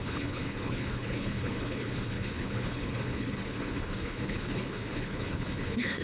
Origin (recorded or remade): remade